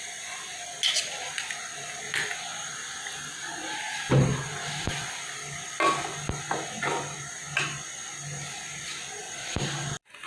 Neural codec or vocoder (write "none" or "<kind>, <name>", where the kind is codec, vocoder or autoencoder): none